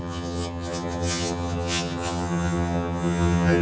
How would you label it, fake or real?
fake